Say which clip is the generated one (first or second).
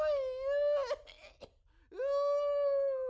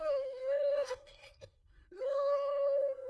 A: second